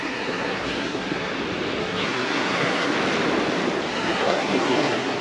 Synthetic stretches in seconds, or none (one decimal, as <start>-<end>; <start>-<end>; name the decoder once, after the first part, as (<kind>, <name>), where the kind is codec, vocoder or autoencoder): 0.0-1.3 (codec, SNAC); 1.8-2.9; 3.9-5.2